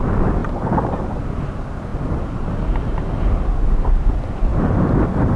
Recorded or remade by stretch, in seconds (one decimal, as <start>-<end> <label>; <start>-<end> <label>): 0.0-0.4 remade; 0.4-0.9 recorded; 0.9-1.9 remade; 1.9-4.1 recorded; 4.1-5.4 remade